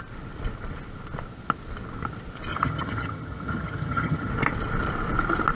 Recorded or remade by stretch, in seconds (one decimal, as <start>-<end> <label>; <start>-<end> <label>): 0.0-2.5 recorded; 2.5-4.3 remade; 4.3-5.5 recorded